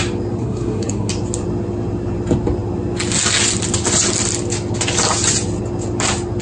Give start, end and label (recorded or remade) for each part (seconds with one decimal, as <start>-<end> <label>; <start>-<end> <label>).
0.0-0.4 recorded; 0.4-1.1 remade; 1.1-6.4 recorded